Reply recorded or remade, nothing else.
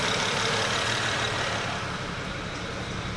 remade